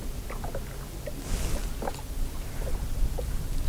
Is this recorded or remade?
recorded